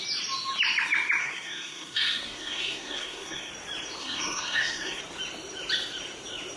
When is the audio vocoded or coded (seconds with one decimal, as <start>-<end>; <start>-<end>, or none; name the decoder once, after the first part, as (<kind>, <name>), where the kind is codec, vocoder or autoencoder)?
1.2-3.5 (codec, SNAC); 4.0-5.0